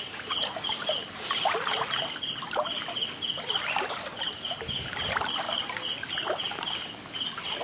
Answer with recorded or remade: recorded